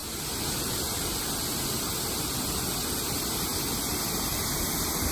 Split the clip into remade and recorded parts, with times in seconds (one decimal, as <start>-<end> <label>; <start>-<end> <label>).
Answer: 0.0-5.1 recorded